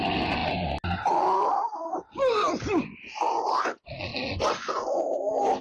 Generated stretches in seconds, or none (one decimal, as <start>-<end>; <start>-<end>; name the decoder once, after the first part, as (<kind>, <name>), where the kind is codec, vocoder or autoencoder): none